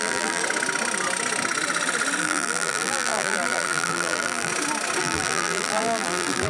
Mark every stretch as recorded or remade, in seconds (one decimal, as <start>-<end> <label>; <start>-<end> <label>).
0.0-0.4 remade; 0.4-2.2 recorded; 2.2-4.5 remade; 4.5-5.0 recorded; 5.0-6.5 remade